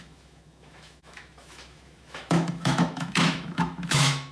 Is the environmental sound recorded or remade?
remade